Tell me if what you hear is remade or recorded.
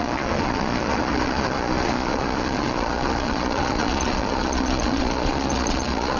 remade